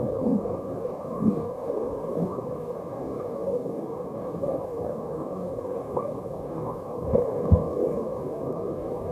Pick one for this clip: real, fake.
fake